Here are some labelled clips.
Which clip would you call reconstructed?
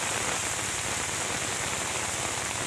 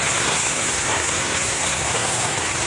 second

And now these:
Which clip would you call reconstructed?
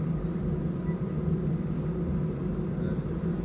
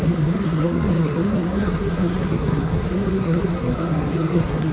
second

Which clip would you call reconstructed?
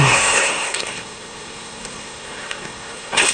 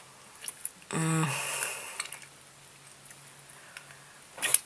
first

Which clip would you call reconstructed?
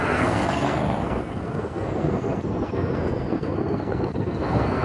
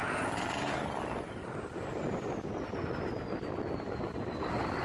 first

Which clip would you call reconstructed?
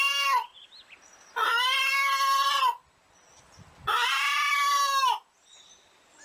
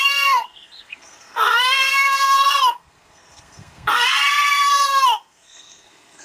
second